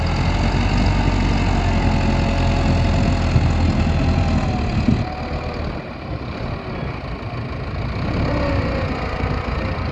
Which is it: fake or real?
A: real